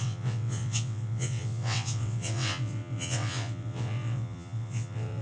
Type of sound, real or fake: fake